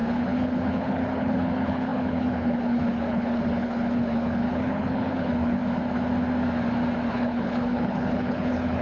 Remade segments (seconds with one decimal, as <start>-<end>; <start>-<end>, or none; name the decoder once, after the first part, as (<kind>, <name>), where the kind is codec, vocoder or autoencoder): 0.0-5.6 (codec, HILCodec); 7.1-8.8